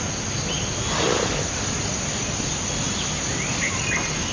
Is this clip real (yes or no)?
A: yes